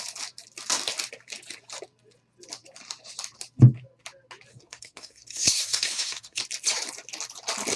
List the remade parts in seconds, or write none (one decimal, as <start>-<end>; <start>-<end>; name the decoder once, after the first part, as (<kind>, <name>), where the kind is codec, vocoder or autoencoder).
4.5-6.4 (codec, SNAC)